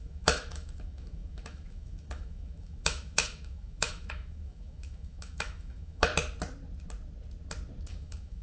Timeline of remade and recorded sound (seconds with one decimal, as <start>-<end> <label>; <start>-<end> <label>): 0.0-6.1 remade; 6.1-7.9 recorded; 7.9-8.4 remade

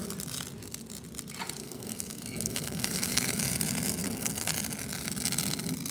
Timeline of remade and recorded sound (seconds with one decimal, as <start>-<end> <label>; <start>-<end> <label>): 0.0-1.6 recorded; 1.6-3.4 remade; 3.4-4.0 recorded; 4.0-4.5 remade; 4.5-5.9 recorded

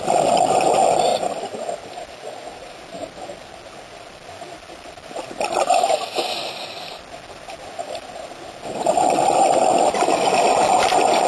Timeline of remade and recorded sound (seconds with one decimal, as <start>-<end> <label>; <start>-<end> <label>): 0.0-11.3 recorded

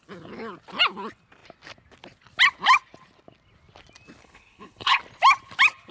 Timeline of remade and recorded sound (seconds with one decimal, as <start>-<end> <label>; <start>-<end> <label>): 0.0-4.2 recorded; 4.2-5.0 remade; 5.0-5.9 recorded